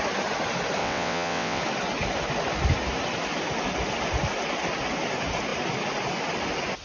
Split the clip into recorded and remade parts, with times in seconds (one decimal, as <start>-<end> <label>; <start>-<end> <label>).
0.0-0.8 recorded; 0.8-1.6 remade; 1.6-6.8 recorded